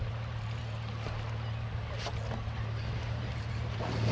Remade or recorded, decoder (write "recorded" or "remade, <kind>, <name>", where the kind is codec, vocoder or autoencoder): recorded